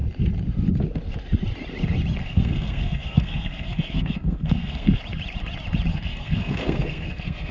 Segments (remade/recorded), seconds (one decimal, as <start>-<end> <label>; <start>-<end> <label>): 0.0-2.2 recorded; 2.2-5.0 remade; 5.0-5.9 recorded; 5.9-7.5 remade